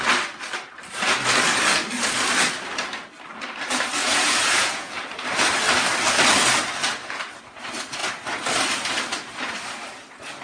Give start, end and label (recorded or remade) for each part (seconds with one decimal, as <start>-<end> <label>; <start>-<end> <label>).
0.0-4.0 recorded; 4.0-4.9 remade; 4.9-10.4 recorded